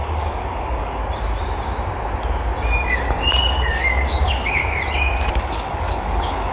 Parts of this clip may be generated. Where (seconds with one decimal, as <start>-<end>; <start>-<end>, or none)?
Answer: 0.0-1.0; 2.9-4.6; 5.3-6.5